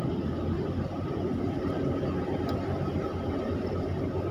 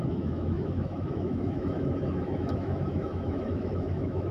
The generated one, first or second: second